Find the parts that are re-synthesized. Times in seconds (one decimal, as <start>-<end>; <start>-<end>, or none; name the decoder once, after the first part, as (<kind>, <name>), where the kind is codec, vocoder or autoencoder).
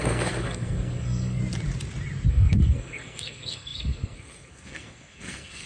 0.0-1.4 (codec, SNAC); 2.3-5.7